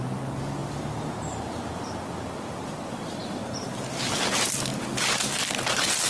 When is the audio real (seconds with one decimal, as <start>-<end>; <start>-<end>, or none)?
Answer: 0.0-6.1